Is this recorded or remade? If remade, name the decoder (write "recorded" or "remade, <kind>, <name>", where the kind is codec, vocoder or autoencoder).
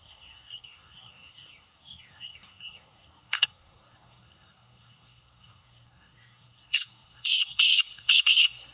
remade, codec, SNAC